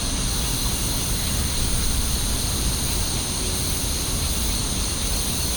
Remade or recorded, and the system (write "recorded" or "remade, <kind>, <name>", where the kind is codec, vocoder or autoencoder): recorded